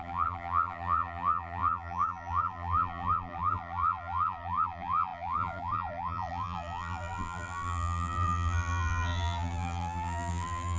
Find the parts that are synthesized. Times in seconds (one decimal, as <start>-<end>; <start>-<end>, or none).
0.0-10.8